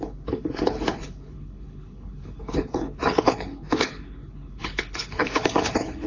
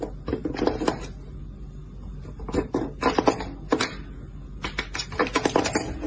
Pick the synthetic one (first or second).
first